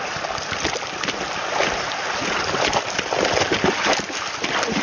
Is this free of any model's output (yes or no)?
yes